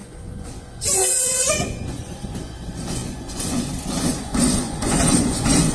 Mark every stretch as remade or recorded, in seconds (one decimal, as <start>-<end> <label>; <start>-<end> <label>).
0.0-5.7 remade